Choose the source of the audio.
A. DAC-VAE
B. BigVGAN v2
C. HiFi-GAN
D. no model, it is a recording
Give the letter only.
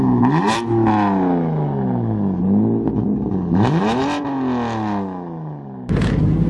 D